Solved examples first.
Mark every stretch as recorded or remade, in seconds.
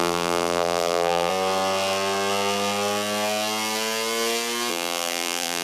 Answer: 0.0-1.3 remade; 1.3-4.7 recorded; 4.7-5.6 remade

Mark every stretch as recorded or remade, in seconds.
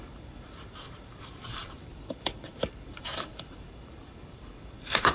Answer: 0.0-5.1 remade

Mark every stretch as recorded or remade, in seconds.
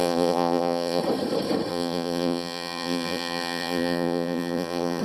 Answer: 0.0-1.0 remade; 1.0-1.7 recorded; 1.7-5.0 remade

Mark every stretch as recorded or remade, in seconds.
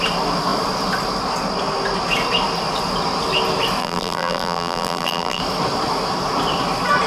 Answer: 0.0-3.8 recorded; 3.8-5.4 remade; 5.4-7.1 recorded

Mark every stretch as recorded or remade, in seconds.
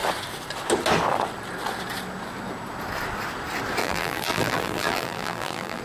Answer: 0.0-3.8 recorded; 3.8-5.8 remade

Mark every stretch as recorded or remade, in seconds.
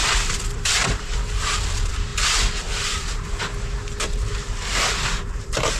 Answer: 0.0-5.8 remade